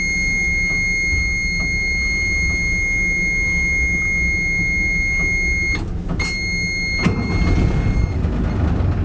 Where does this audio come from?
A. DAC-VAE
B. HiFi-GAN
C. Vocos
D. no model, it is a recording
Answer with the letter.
D